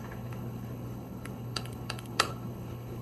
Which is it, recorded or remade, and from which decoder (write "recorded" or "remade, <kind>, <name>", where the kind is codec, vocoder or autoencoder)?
remade, codec, HILCodec